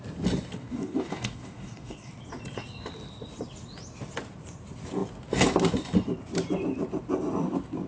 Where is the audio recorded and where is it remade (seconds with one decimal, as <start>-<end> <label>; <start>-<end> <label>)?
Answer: 0.0-0.6 recorded; 0.6-2.1 remade; 2.1-7.9 recorded